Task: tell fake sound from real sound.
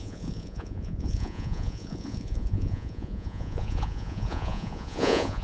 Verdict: fake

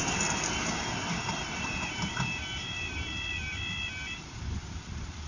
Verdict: fake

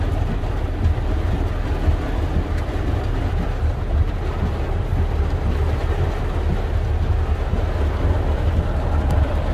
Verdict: fake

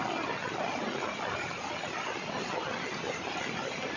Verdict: real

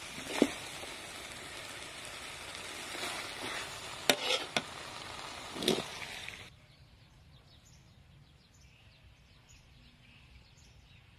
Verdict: real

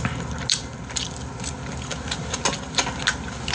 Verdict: real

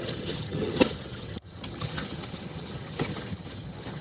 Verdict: fake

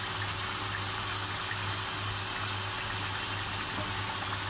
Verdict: real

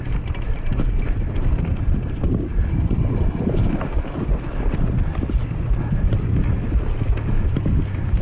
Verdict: real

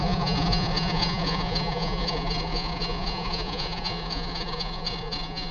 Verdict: fake